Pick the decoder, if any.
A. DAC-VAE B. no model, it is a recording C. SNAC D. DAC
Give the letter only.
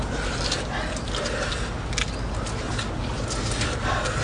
B